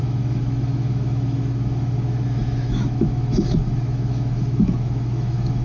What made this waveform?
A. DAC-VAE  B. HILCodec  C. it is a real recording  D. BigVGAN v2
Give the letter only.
A